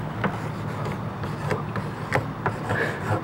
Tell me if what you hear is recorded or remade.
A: recorded